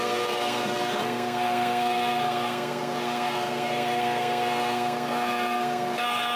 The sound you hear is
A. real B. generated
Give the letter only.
B